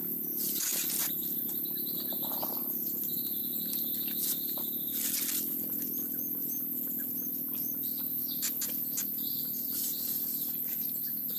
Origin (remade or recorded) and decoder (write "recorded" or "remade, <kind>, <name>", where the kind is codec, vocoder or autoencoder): remade, vocoder, BigVGAN v2